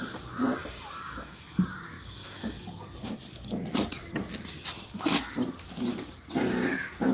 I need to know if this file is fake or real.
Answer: real